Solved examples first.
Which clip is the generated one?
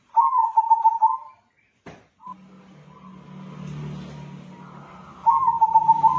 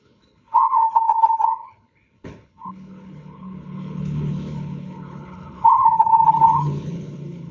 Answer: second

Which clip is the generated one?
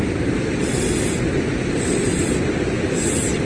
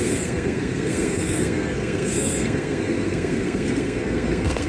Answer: second